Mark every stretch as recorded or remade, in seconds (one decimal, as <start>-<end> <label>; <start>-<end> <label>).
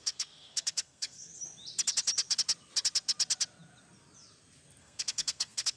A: 0.0-1.3 remade; 1.3-4.8 recorded; 4.8-5.8 remade